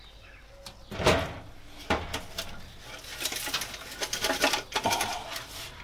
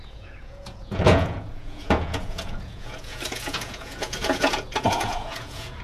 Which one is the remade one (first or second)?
second